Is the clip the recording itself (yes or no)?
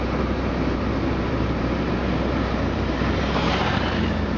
no